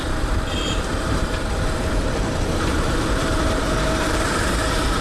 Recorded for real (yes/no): no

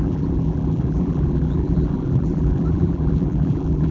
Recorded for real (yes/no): no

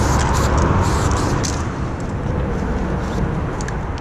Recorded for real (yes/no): yes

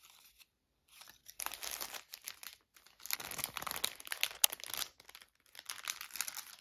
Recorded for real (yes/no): yes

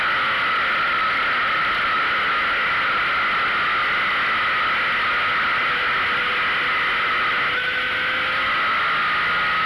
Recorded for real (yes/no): yes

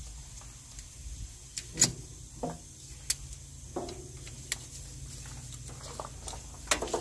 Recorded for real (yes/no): yes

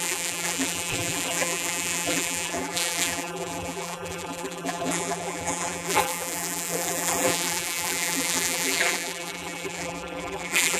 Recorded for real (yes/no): no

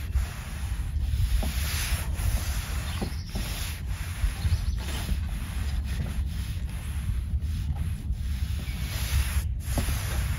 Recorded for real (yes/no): yes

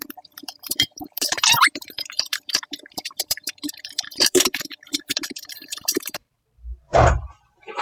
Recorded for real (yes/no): no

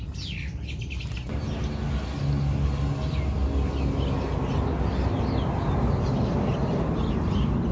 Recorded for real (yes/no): yes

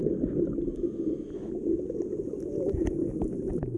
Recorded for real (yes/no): yes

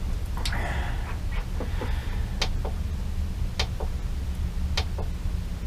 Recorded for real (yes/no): yes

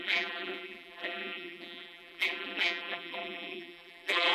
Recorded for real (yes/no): no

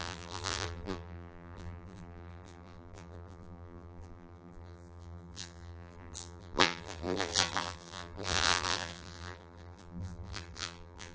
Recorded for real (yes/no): no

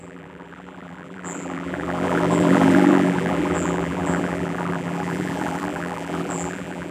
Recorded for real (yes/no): no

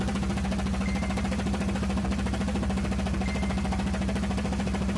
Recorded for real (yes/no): yes